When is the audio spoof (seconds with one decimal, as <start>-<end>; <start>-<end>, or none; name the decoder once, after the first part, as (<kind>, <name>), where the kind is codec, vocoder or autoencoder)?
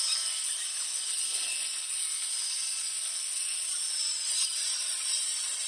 2.0-5.7 (vocoder, BigVGAN v2)